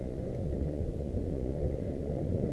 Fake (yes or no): yes